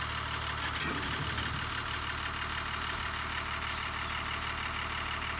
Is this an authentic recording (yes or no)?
yes